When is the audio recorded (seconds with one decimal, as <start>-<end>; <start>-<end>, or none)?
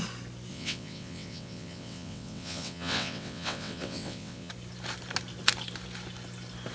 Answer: 0.0-0.5; 4.5-6.7